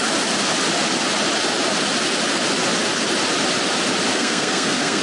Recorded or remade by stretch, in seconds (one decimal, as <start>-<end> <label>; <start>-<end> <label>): 0.0-4.1 recorded; 4.1-5.0 remade